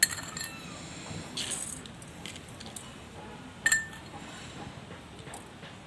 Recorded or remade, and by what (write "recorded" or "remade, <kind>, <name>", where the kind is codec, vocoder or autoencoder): recorded